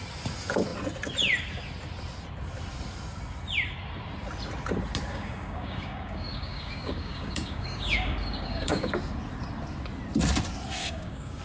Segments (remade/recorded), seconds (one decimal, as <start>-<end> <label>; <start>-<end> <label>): 0.0-5.1 recorded; 5.1-8.9 remade; 8.9-10.8 recorded; 10.8-11.4 remade